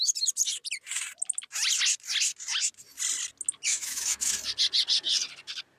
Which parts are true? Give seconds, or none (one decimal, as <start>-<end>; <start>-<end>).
0.0-3.7; 4.3-5.8